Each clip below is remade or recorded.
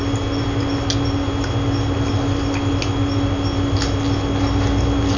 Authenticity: recorded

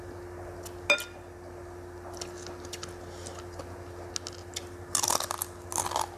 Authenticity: recorded